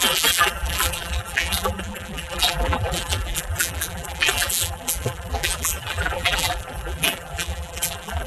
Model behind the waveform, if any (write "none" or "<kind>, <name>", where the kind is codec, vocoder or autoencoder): vocoder, BigVGAN v2